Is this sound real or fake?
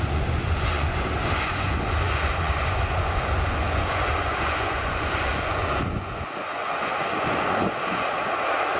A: fake